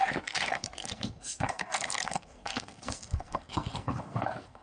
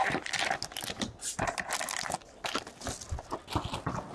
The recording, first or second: second